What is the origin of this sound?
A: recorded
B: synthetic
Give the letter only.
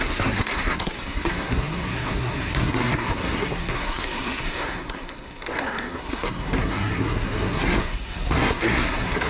B